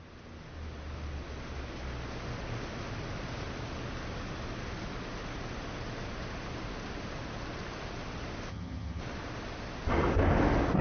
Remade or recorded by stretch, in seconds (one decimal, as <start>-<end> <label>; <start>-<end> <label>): 0.0-8.5 recorded; 8.5-9.0 remade; 9.0-10.8 recorded